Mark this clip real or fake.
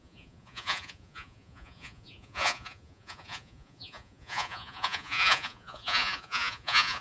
fake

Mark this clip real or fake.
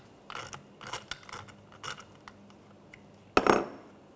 real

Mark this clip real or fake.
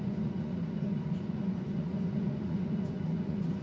fake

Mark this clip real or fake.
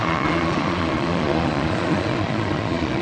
fake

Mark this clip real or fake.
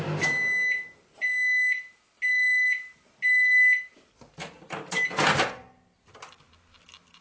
real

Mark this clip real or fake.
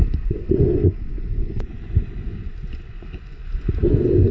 fake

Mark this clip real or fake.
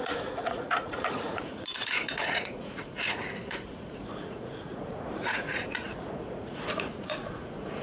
fake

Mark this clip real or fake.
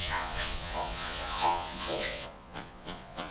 fake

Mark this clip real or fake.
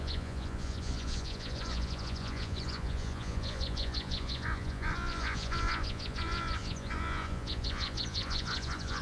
fake